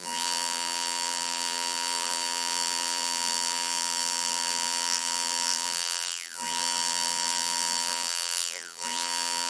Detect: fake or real fake